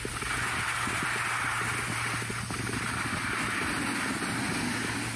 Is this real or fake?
real